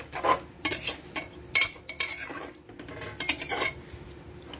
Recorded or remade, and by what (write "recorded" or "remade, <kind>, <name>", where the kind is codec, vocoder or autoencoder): recorded